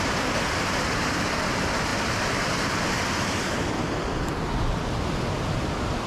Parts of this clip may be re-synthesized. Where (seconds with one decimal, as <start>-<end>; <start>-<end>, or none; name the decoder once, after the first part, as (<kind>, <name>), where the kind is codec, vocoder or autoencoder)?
none